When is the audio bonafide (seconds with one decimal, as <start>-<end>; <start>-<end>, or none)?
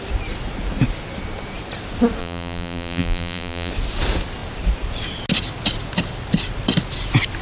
0.0-2.2; 3.7-7.4